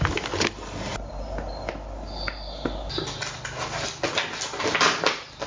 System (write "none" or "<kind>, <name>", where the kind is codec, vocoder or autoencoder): none